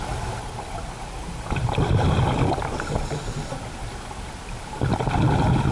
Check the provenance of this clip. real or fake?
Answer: real